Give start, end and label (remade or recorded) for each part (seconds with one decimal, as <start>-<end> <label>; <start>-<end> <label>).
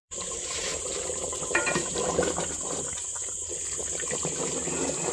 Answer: 0.0-2.1 remade; 2.1-5.1 recorded